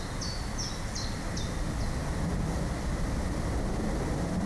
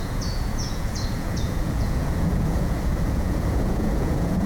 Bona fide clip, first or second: first